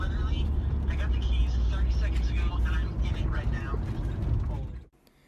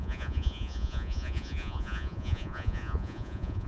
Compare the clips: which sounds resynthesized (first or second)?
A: second